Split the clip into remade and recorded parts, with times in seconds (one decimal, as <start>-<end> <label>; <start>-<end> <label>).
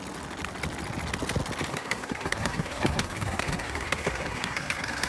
0.0-1.7 recorded; 1.7-5.1 remade